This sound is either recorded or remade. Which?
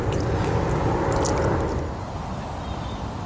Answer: recorded